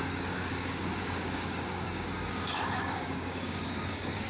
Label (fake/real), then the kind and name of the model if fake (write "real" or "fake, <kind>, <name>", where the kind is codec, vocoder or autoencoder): fake, codec, DAC